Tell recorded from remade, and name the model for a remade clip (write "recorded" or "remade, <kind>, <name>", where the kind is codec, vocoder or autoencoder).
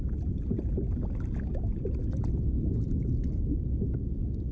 recorded